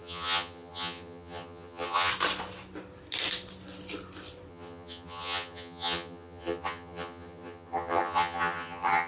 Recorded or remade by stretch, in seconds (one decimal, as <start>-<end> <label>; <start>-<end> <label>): 0.0-2.1 remade; 2.1-4.5 recorded; 4.5-9.1 remade